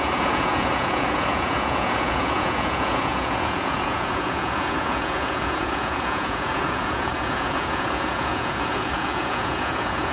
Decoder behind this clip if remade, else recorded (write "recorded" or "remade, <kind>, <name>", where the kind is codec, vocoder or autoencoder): remade, vocoder, Vocos